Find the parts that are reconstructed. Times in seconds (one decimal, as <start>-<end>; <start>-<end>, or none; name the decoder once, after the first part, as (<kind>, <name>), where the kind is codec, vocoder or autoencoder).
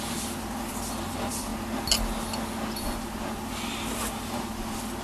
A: none